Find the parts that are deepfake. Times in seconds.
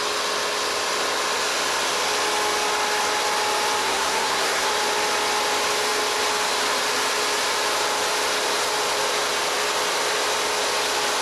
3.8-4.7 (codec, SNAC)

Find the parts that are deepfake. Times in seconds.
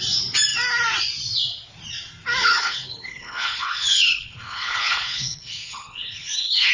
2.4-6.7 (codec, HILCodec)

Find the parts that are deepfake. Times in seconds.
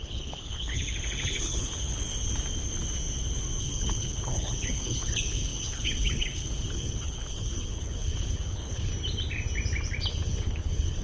0.0-2.0 (codec, HILCodec); 3.6-8.9; 10.1-11.0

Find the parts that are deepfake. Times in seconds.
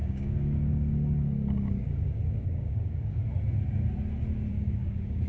0.0-3.2 (codec, DAC); 4.5-5.3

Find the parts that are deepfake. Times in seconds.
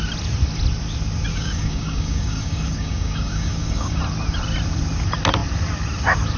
1.3-4.0 (codec, DAC)